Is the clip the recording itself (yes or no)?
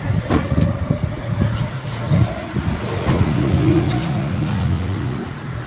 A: no